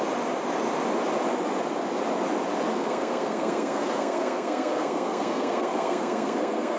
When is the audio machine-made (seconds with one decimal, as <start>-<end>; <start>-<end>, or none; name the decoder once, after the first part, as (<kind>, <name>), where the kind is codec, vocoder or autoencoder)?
2.7-6.8 (codec, SNAC)